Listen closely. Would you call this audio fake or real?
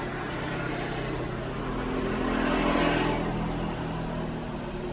real